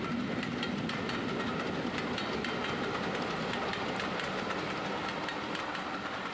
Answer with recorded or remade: recorded